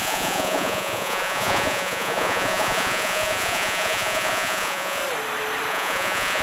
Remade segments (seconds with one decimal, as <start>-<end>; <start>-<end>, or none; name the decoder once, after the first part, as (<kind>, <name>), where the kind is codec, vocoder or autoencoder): 0.0-5.0 (vocoder, Vocos); 5.7-6.4

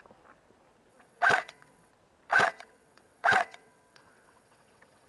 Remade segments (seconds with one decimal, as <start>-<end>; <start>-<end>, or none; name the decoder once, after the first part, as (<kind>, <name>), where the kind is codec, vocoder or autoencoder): 0.9-1.9 (vocoder, WaveNeXt); 2.3-5.1

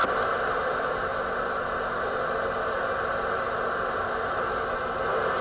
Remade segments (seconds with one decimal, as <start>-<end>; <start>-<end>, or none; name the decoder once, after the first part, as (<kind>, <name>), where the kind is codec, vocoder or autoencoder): none

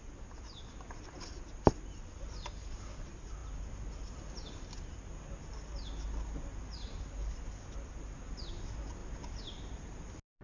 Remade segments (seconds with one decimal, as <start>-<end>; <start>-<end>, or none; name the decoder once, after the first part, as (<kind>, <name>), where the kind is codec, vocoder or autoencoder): none

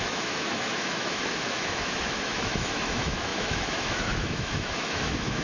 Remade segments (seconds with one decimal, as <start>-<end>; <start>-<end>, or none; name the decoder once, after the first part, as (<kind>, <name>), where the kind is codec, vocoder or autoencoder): 0.0-5.4 (autoencoder, DAC-VAE)

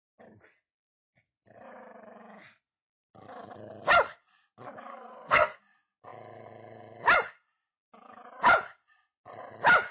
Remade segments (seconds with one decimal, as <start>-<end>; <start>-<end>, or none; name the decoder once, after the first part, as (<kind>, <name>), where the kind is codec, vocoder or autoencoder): 4.9-5.6 (codec, SNAC)